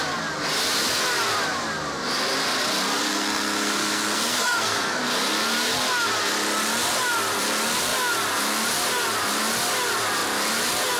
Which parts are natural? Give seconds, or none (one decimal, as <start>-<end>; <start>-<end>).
0.0-3.0; 5.0-11.0